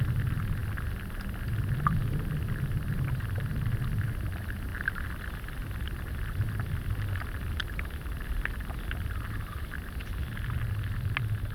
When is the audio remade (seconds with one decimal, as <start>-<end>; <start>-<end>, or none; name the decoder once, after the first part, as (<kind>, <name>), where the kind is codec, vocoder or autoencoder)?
none